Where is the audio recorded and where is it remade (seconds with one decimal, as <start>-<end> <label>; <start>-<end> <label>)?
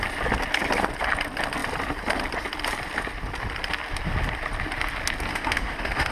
0.0-5.3 recorded; 5.3-6.1 remade